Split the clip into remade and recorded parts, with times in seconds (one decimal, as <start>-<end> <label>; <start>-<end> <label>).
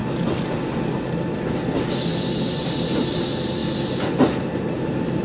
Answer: 0.0-5.2 recorded